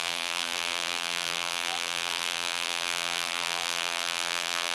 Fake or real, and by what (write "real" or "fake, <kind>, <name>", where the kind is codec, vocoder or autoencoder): fake, vocoder, BigVGAN v2